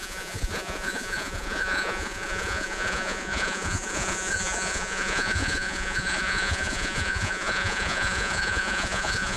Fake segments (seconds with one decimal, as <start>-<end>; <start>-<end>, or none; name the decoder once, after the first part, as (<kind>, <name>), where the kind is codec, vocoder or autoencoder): 0.0-9.4 (vocoder, Vocos)